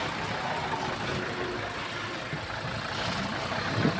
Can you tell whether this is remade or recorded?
recorded